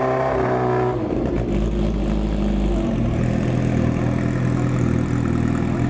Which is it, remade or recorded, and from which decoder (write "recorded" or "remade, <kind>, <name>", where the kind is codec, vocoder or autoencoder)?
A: recorded